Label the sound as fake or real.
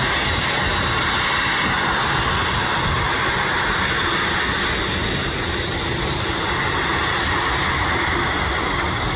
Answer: real